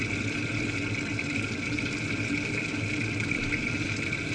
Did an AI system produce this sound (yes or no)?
no